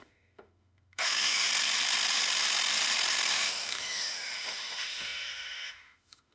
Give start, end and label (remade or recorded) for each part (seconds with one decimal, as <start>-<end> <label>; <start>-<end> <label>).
0.0-1.5 remade; 1.5-3.3 recorded; 3.3-6.3 remade